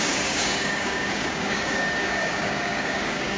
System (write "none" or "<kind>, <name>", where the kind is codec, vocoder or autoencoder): codec, DAC